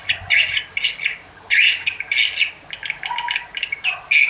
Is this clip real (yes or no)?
yes